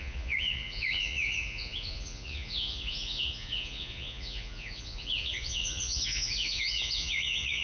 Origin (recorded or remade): remade